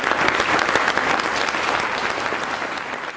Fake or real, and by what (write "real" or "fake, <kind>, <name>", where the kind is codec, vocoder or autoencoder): real